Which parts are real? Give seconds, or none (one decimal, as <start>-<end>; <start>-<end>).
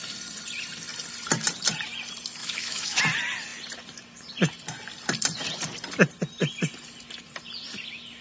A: 0.0-2.4; 3.0-8.2